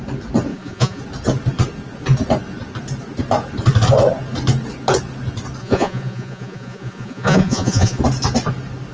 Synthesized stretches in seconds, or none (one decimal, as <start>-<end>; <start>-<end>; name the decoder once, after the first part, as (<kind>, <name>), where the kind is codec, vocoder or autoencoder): 0.5-1.0 (vocoder, Vocos); 5.6-8.0